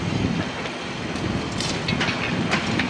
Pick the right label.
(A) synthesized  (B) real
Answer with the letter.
B